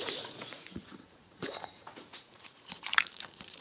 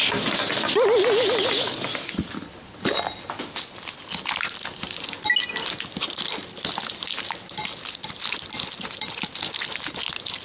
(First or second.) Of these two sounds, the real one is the second